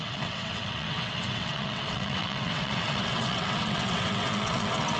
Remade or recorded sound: remade